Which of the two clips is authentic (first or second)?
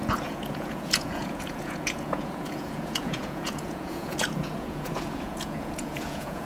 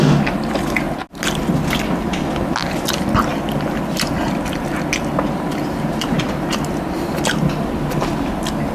second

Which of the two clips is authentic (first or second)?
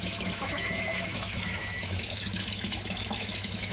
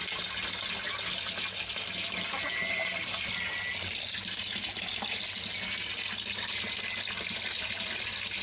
second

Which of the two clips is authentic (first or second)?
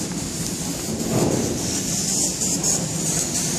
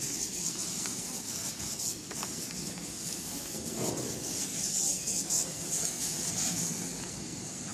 first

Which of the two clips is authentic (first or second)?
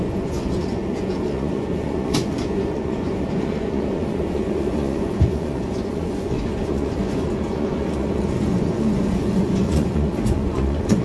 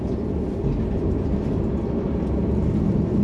second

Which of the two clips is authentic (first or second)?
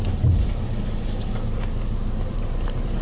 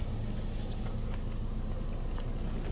second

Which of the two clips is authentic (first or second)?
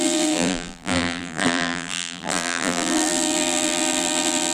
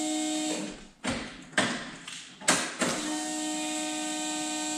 second